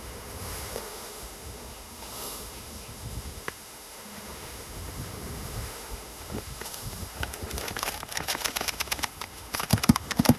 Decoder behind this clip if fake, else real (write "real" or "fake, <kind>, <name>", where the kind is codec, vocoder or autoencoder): fake, autoencoder, DAC-VAE